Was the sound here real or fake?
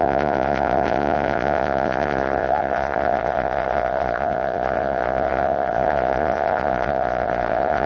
fake